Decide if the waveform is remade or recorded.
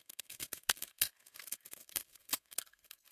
remade